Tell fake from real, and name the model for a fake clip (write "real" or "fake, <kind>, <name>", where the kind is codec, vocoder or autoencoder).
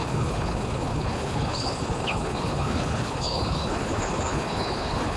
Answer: fake, codec, HILCodec